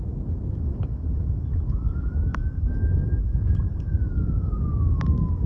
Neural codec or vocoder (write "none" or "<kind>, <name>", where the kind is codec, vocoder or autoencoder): autoencoder, DAC-VAE